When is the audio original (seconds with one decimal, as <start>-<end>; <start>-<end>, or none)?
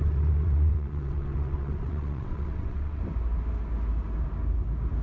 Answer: 3.0-5.0